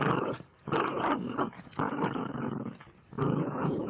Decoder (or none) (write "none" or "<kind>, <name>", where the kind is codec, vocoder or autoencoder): codec, DAC